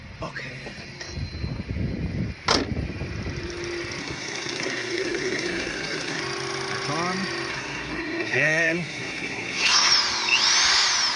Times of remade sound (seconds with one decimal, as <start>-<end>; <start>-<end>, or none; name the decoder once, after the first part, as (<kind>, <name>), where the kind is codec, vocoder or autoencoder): 4.0-6.2 (codec, SNAC); 7.5-9.9